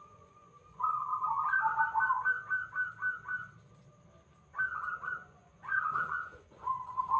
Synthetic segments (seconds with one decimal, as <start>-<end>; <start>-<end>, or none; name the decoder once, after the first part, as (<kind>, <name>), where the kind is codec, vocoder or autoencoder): 0.0-1.1 (vocoder, Vocos); 4.8-7.2